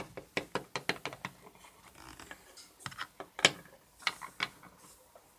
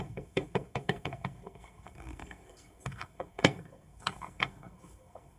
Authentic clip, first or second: first